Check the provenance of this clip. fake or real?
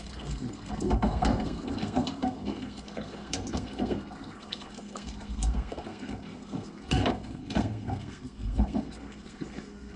fake